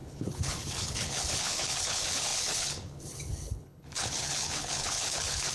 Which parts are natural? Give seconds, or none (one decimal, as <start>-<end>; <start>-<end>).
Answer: none